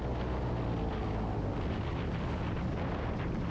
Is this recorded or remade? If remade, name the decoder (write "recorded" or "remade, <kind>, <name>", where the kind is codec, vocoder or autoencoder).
recorded